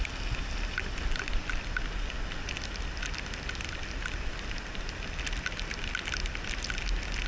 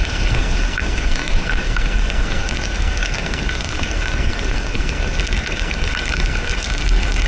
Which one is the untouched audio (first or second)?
first